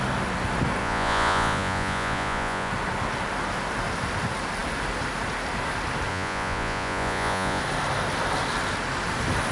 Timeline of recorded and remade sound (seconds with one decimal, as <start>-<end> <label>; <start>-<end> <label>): 0.0-0.8 recorded; 0.8-2.7 remade; 2.7-6.1 recorded; 6.1-7.6 remade; 7.6-9.5 recorded